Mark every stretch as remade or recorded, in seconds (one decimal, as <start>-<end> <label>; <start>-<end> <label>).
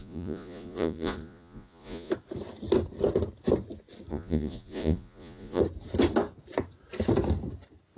0.0-2.1 remade; 2.1-4.1 recorded; 4.1-5.6 remade; 5.6-8.0 recorded